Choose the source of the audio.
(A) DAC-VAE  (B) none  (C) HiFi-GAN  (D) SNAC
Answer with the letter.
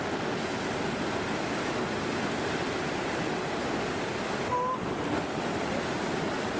B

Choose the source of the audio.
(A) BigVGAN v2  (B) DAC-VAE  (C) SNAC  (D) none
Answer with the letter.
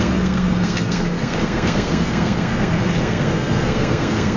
C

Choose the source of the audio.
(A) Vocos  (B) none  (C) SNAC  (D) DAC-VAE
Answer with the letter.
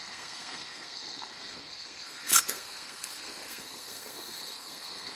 C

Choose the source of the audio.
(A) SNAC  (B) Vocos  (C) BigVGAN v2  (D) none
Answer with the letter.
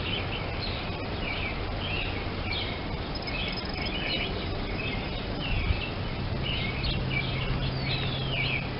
D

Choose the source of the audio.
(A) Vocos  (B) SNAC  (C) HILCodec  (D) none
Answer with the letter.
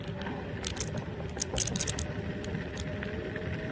D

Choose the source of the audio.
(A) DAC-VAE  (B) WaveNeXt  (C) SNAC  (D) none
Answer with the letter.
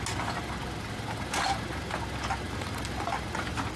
D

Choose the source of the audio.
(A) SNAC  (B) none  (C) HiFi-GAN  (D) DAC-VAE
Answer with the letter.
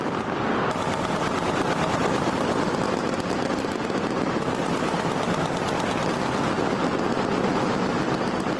B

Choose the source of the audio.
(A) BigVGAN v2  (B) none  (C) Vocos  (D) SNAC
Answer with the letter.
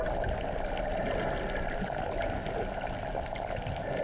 B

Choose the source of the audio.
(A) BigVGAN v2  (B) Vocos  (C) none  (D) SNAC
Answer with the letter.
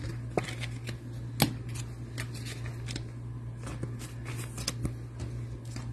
C